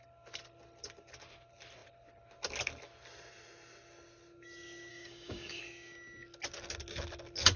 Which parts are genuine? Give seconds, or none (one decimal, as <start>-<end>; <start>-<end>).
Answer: 0.0-4.9; 5.6-7.6